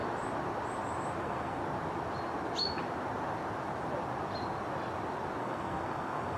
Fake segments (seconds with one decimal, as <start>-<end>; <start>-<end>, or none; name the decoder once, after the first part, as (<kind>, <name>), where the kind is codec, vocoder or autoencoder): 1.2-1.6 (codec, SNAC); 5.4-6.4